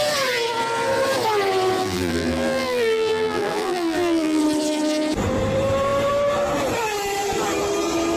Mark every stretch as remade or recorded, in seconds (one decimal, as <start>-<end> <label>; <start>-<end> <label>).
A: 0.0-1.8 recorded; 1.8-4.4 remade; 4.4-8.2 recorded